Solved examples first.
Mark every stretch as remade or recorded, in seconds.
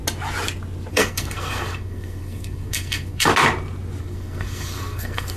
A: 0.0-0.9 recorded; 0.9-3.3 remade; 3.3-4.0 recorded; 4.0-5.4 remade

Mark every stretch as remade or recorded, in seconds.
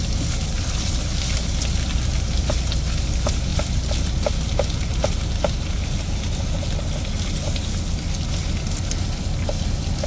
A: 0.0-2.4 recorded; 2.4-3.1 remade; 3.1-3.5 recorded; 3.5-5.0 remade; 5.0-10.1 recorded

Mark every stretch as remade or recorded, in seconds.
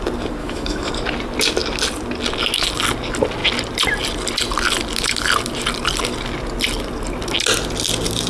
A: 0.0-0.4 recorded; 0.4-0.9 remade; 0.9-8.3 recorded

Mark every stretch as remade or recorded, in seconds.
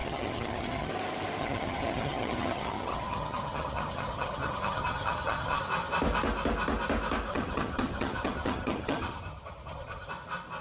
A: 0.0-0.9 remade; 0.9-1.4 recorded; 1.4-5.6 remade; 5.6-7.3 recorded; 7.3-10.1 remade; 10.1-10.6 recorded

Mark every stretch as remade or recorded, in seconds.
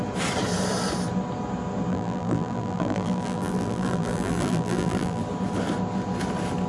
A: 0.0-1.9 recorded; 1.9-5.2 remade; 5.2-6.7 recorded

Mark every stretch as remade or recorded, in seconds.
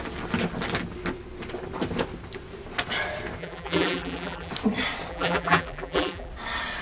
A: 0.0-3.4 recorded; 3.4-4.5 remade; 4.5-5.1 recorded; 5.1-6.3 remade; 6.3-6.8 recorded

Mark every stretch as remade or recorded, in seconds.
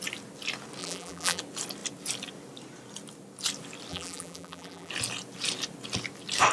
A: 0.0-0.8 recorded; 0.8-1.4 remade; 1.4-3.9 recorded; 3.9-4.9 remade; 4.9-6.5 recorded